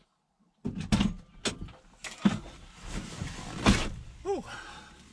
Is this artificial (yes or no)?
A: no